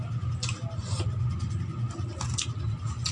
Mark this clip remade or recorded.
recorded